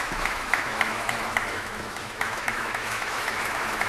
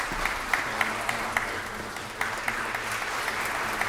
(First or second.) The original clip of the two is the second